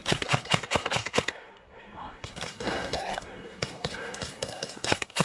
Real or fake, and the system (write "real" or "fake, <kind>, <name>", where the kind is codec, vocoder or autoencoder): fake, codec, SNAC